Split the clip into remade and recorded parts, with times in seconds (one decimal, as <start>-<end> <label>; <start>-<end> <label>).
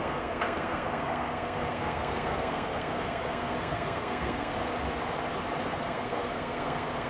0.0-4.7 remade; 4.7-5.6 recorded; 5.6-7.1 remade